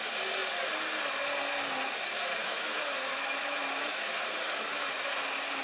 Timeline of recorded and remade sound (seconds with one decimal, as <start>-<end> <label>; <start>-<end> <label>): 0.0-2.4 recorded; 2.4-4.8 remade; 4.8-5.6 recorded